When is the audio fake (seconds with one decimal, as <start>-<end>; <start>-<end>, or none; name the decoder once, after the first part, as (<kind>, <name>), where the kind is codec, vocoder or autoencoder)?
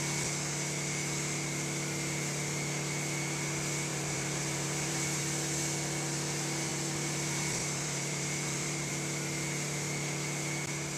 3.9-5.2 (vocoder, BigVGAN v2); 6.7-8.9